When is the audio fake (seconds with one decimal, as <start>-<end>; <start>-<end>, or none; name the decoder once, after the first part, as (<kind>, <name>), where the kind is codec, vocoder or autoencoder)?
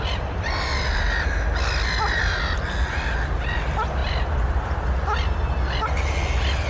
4.0-4.9 (vocoder, BigVGAN v2)